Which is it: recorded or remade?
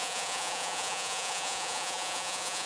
remade